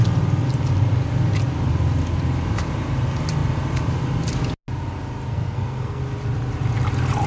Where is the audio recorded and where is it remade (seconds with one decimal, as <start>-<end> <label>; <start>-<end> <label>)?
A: 0.0-5.3 recorded; 5.3-6.0 remade; 6.0-7.3 recorded